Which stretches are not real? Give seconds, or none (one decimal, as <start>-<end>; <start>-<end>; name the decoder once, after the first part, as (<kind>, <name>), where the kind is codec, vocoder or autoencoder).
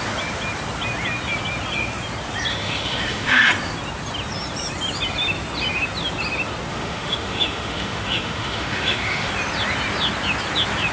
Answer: 2.5-3.5 (autoencoder, DAC-VAE); 6.7-9.3